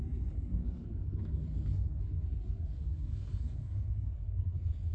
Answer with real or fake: fake